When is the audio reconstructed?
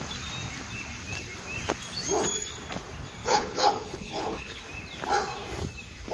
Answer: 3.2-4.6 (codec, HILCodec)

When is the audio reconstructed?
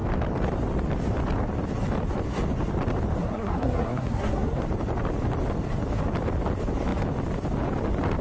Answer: 3.2-4.6 (codec, SNAC)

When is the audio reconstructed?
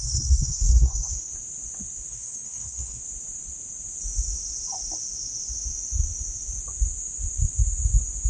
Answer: 0.0-1.3 (codec, SNAC); 2.1-3.0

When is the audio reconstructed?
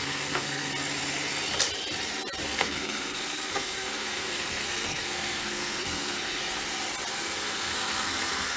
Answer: 0.0-0.7 (codec, SNAC); 2.5-6.4; 7.1-8.6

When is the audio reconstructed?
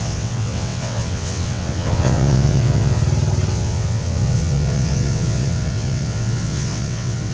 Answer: 0.0-3.0 (vocoder, WaveNeXt); 3.5-7.3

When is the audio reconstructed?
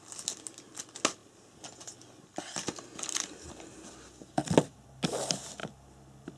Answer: none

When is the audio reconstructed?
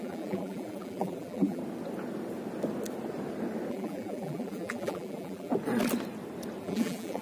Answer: 0.0-1.6 (vocoder, BigVGAN v2); 3.7-5.5; 6.6-7.2